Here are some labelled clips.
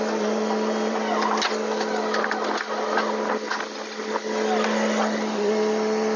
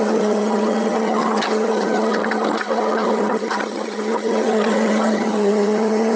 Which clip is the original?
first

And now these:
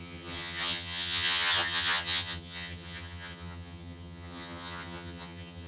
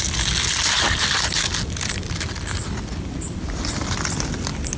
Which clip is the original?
second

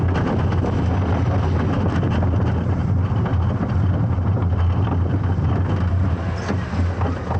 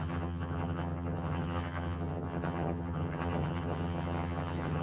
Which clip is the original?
first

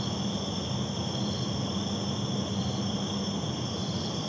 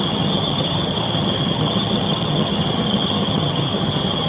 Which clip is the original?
first